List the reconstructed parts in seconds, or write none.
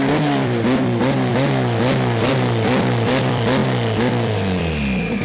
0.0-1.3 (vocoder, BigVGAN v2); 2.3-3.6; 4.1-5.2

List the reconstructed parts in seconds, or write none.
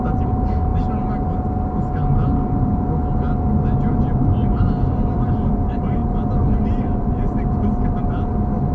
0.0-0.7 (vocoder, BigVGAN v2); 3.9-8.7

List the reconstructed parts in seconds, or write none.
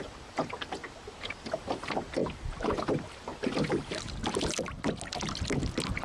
0.8-1.5 (vocoder, BigVGAN v2); 2.2-2.8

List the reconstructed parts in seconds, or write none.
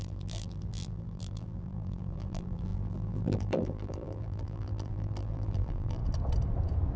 0.0-6.0 (vocoder, BigVGAN v2)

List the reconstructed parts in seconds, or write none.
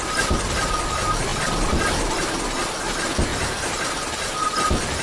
1.3-1.9 (vocoder, BigVGAN v2); 3.3-4.5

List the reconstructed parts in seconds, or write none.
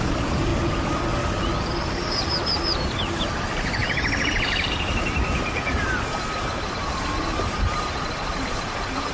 0.0-0.5 (vocoder, BigVGAN v2); 2.8-9.1